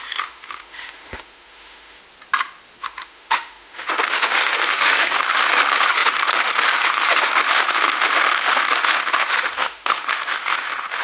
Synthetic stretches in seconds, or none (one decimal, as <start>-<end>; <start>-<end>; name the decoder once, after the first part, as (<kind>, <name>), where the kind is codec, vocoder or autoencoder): 0.0-2.0 (autoencoder, DAC-VAE); 2.8-11.0